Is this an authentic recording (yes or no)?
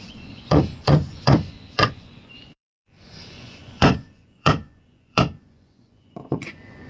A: no